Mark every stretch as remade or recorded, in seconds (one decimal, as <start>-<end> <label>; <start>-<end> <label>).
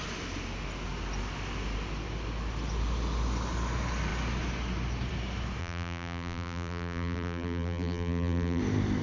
0.0-5.6 recorded; 5.6-8.6 remade; 8.6-9.0 recorded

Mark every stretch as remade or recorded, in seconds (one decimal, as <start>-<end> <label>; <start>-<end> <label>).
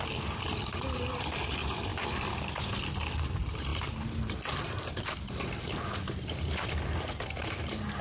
0.0-8.0 recorded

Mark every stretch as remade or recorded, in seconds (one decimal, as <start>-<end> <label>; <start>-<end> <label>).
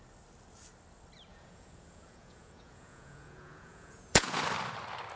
0.0-1.3 recorded; 1.3-4.4 remade; 4.4-5.2 recorded